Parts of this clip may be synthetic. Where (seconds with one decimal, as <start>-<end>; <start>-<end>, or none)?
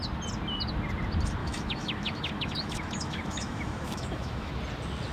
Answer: 1.4-4.5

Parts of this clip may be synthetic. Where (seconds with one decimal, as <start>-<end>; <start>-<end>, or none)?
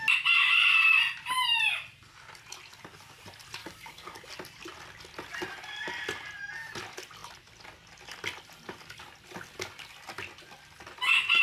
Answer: 3.6-4.3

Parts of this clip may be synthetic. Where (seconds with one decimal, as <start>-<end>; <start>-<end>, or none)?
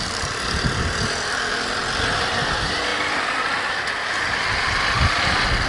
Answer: none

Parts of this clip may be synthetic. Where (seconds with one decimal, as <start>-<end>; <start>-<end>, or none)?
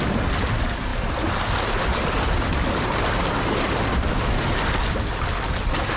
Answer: none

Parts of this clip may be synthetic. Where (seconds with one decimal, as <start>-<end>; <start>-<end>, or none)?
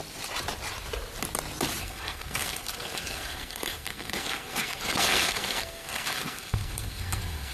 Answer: 1.8-7.5